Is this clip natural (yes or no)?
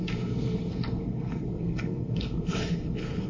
no